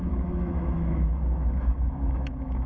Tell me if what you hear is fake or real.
fake